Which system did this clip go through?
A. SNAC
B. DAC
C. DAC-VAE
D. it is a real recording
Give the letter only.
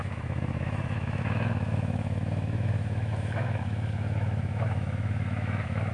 C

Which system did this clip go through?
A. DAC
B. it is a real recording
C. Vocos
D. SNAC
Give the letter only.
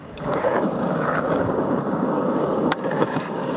A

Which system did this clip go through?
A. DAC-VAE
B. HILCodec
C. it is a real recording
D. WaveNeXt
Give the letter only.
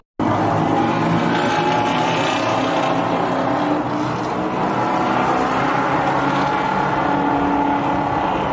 C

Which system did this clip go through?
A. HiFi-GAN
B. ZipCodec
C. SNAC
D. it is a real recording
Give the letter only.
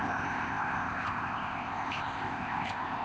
B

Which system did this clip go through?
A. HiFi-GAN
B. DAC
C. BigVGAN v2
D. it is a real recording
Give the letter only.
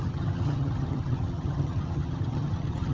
A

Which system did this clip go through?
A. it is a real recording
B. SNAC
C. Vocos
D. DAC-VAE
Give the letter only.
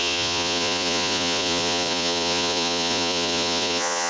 C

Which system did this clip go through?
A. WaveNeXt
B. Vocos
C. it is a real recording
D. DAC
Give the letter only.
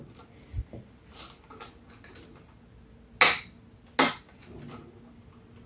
C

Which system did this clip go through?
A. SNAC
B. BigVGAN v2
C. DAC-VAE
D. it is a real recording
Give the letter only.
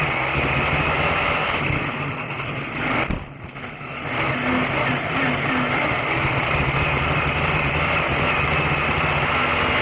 D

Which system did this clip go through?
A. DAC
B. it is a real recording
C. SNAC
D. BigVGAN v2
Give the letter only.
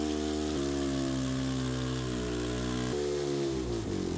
B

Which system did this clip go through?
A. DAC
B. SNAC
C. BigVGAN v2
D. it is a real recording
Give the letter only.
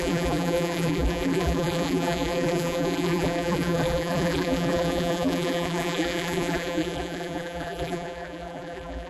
C